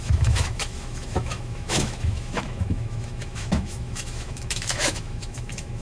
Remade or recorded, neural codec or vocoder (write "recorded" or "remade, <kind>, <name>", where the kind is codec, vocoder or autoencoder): remade, autoencoder, DAC-VAE